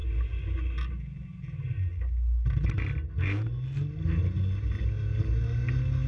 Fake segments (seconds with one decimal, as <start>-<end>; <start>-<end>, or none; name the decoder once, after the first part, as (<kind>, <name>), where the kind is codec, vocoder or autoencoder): none